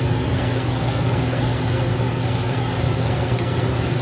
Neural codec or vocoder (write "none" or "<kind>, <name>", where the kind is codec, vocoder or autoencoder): codec, SNAC